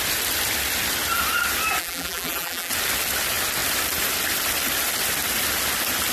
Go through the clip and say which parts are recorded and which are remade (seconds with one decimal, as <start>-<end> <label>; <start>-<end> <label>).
0.0-1.8 recorded; 1.8-2.7 remade; 2.7-6.1 recorded